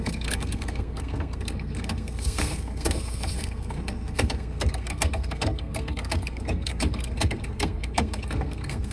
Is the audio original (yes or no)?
no